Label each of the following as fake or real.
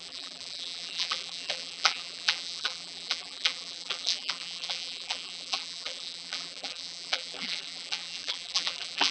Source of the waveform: fake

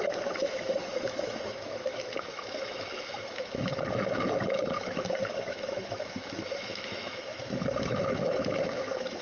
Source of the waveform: fake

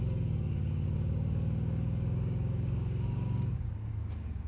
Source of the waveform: fake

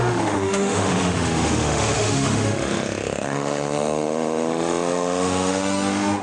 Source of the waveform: fake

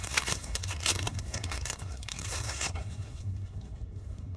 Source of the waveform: fake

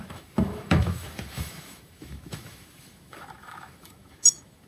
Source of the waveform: fake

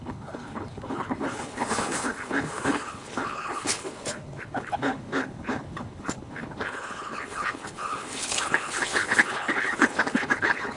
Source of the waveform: fake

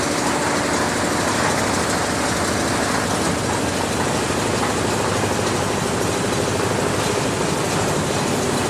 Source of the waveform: real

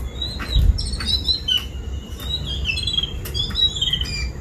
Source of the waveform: real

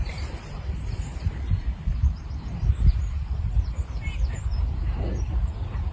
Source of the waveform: fake